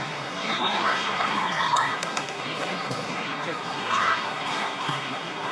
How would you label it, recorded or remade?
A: remade